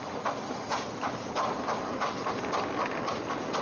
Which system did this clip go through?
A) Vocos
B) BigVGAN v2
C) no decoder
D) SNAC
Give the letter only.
C